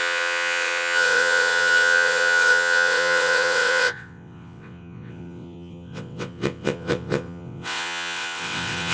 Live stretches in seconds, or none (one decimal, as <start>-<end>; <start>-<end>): none